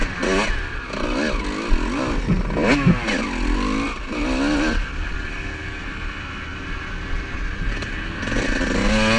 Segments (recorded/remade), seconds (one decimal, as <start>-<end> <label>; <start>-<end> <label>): 0.0-9.2 recorded